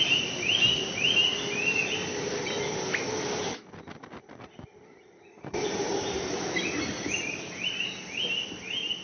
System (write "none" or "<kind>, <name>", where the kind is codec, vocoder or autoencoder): none